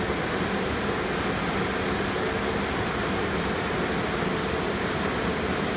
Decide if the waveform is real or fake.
real